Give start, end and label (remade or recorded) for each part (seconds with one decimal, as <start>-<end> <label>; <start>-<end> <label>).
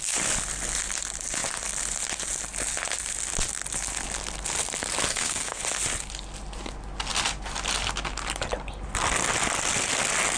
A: 0.0-5.1 recorded; 5.1-5.6 remade; 5.6-10.4 recorded